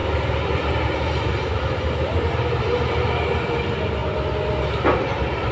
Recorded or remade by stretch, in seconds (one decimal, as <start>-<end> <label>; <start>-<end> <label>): 0.0-5.5 recorded